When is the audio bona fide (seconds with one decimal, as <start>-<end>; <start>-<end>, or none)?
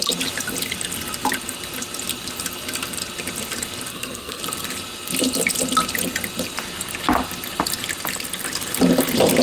0.0-3.9; 4.4-9.4